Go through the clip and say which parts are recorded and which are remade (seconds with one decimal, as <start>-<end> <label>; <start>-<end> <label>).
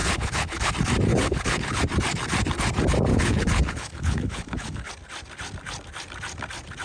0.0-0.7 remade; 0.7-1.1 recorded; 1.1-1.8 remade; 1.8-3.1 recorded; 3.1-4.9 remade; 4.9-6.8 recorded